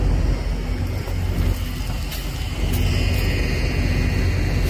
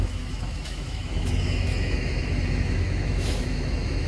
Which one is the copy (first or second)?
second